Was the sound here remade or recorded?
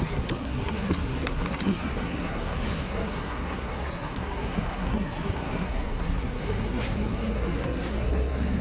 remade